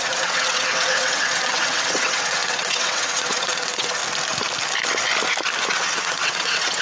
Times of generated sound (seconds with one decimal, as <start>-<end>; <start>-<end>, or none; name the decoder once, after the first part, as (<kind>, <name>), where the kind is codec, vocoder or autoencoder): 0.0-4.0 (vocoder, WaveNeXt); 5.7-6.8